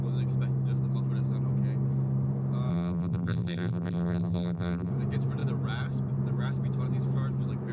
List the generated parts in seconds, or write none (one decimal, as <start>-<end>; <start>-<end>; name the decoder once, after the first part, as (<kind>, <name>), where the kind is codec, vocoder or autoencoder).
2.7-4.9 (vocoder, BigVGAN v2)